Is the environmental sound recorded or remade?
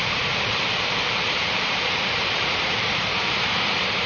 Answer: remade